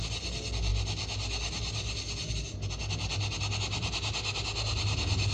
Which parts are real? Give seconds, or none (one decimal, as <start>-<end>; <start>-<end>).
0.0-5.3